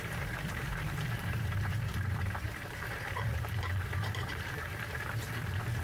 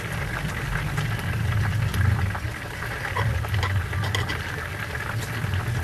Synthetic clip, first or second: first